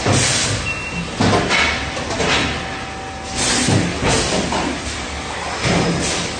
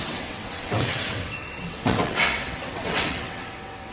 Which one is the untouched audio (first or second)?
first